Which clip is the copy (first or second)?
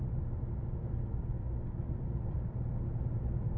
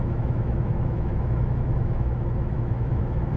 second